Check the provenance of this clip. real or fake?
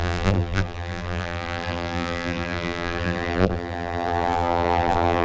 fake